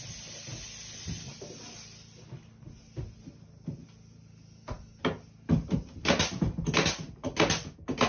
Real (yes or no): yes